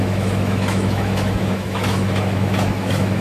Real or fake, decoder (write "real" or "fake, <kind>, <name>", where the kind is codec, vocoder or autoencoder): fake, autoencoder, DAC-VAE